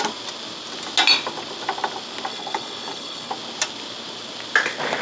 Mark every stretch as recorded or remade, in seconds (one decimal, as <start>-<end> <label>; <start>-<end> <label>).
0.0-2.3 recorded; 2.3-3.3 remade; 3.3-5.0 recorded